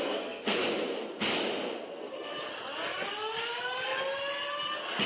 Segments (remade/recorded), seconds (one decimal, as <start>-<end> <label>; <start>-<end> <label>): 0.0-0.6 remade; 0.6-1.9 recorded; 1.9-2.3 remade; 2.3-5.1 recorded